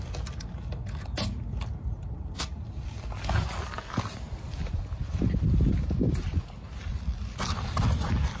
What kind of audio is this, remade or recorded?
recorded